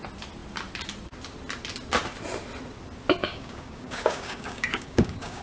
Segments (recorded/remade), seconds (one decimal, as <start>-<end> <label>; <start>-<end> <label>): 0.0-3.2 recorded; 3.2-5.4 remade